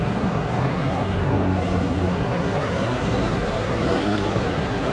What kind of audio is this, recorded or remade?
remade